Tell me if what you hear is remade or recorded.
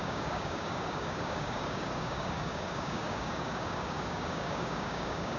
remade